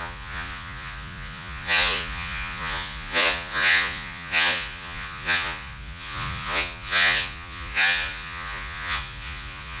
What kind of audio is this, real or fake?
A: fake